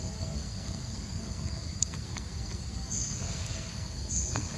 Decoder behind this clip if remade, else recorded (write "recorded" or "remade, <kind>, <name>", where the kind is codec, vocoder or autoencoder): remade, codec, SNAC